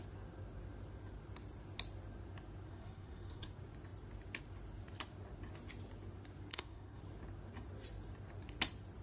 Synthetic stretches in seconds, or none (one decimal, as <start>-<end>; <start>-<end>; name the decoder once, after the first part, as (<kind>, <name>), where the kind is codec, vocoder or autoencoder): 2.7-3.5 (codec, SNAC); 6.5-7.0